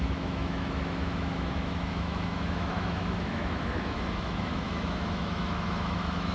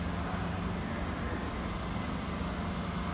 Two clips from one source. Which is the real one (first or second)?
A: second